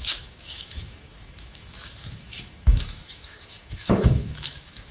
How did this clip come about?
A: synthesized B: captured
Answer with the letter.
A